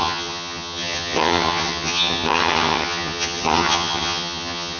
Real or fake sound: fake